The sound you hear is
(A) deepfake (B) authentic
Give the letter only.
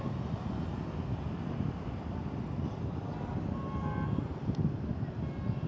B